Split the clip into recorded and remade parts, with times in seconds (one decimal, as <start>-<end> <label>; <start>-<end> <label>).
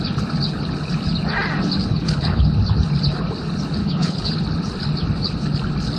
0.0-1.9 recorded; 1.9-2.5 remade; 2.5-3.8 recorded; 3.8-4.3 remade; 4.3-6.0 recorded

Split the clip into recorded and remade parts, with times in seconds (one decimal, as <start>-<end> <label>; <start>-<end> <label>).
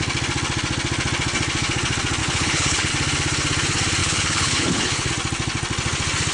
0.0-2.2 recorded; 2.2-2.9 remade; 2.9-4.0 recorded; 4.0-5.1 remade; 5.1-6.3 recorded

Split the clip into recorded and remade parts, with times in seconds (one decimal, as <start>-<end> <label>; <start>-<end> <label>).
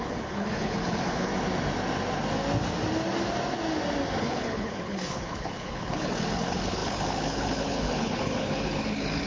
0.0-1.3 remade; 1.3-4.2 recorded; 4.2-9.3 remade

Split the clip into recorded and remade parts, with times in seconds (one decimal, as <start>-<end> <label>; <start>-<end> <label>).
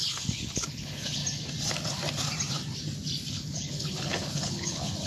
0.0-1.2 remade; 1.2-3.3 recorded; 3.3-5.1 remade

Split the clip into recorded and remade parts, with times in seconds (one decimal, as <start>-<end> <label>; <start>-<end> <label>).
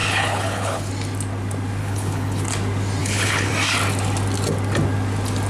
0.0-0.9 remade; 0.9-1.8 recorded; 1.8-2.4 remade; 2.4-3.0 recorded; 3.0-3.5 remade; 3.5-5.5 recorded